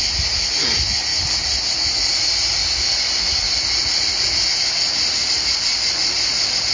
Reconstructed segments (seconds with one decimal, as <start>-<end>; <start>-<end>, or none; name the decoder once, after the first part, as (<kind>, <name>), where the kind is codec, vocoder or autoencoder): none

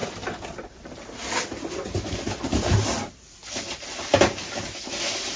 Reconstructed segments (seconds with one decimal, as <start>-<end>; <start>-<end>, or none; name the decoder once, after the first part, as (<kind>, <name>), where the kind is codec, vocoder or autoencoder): none

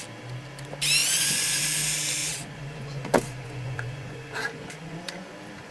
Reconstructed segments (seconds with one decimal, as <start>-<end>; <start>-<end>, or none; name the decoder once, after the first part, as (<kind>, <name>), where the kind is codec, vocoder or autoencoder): 1.0-1.6 (vocoder, Vocos); 2.2-5.7

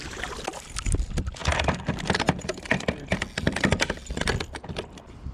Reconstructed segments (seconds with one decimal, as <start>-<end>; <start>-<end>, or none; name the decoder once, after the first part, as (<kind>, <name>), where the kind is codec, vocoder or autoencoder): none

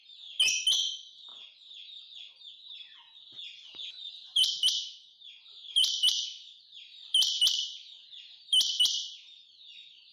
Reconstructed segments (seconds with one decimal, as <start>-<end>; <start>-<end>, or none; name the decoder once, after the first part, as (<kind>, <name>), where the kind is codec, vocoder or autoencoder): 1.3-2.4 (vocoder, BigVGAN v2); 4.2-9.5

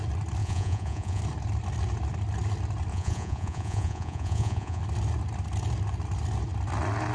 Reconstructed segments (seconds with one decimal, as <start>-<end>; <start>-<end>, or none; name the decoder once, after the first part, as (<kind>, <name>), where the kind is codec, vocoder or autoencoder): 0.4-1.2 (vocoder, Vocos); 2.9-4.8

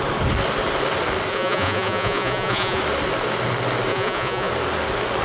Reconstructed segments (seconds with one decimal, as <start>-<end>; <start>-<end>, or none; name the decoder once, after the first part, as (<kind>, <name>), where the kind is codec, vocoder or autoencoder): 1.3-2.8 (vocoder, Vocos); 3.9-4.5

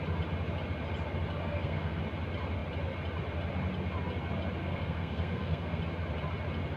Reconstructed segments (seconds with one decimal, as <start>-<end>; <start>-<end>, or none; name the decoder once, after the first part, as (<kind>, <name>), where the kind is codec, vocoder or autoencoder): 1.4-2.0 (codec, SNAC); 4.6-5.8